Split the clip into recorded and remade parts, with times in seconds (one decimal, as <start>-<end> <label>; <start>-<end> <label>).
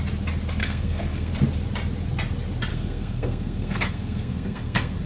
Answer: 0.0-0.6 recorded; 0.6-1.3 remade; 1.3-2.7 recorded; 2.7-5.1 remade